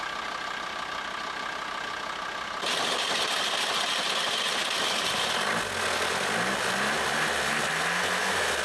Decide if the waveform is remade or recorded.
recorded